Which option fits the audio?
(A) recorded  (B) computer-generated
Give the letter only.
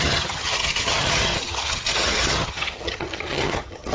B